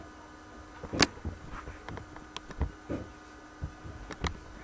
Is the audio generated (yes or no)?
no